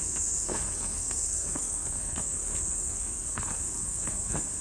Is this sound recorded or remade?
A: remade